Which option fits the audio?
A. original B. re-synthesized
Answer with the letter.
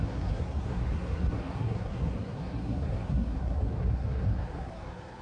B